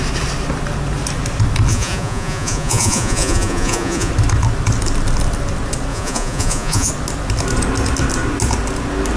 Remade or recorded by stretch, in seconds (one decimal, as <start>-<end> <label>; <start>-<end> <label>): 0.0-1.7 recorded; 1.7-4.1 remade; 4.1-5.9 recorded; 5.9-6.9 remade; 6.9-9.2 recorded